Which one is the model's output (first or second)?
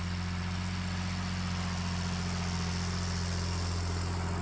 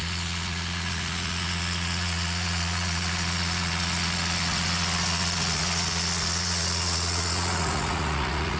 second